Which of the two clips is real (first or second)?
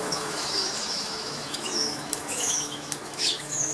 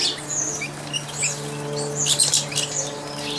second